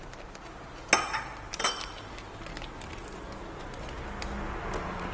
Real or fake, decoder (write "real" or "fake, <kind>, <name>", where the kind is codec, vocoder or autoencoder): real